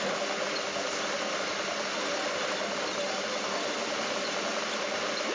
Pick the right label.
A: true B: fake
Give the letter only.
A